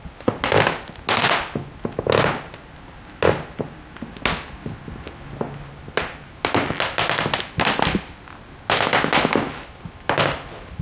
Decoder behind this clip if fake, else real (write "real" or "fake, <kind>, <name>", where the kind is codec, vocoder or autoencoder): real